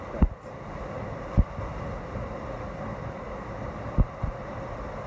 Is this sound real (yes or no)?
yes